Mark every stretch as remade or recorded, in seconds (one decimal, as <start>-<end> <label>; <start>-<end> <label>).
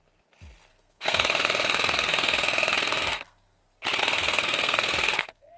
0.0-0.7 recorded; 0.7-3.6 remade; 3.6-4.0 recorded; 4.0-5.6 remade